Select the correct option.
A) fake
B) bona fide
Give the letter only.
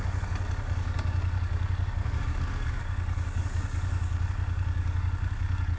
A